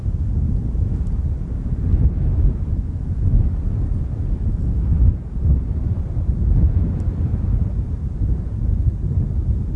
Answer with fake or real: real